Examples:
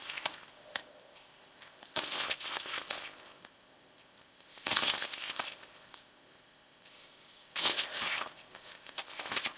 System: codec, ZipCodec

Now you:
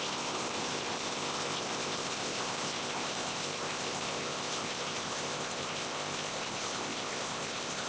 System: codec, ZipCodec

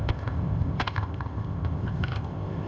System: codec, ZipCodec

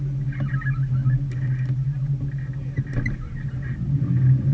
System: none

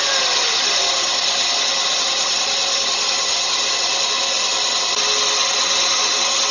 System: none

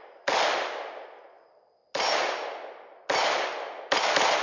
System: none